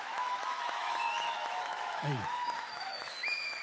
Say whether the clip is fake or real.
fake